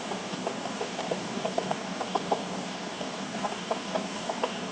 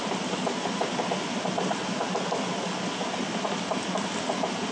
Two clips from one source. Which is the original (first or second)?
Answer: second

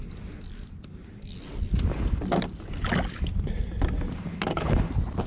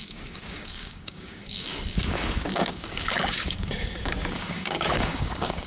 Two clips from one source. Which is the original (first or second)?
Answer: first